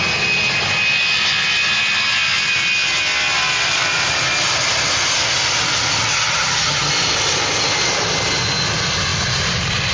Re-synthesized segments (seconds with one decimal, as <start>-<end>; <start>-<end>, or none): 6.1-6.9